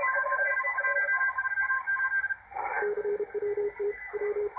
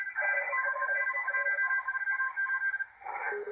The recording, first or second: second